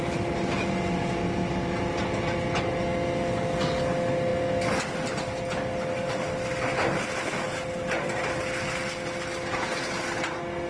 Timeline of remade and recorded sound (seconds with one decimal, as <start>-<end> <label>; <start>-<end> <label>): 0.0-10.7 recorded